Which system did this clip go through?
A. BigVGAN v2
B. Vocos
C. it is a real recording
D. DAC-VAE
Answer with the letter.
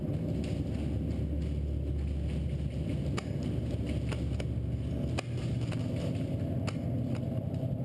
C